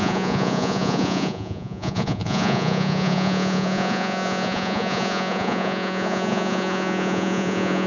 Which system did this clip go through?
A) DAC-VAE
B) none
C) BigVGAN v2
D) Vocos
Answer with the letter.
D